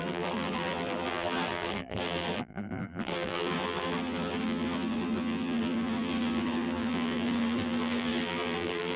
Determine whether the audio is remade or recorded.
remade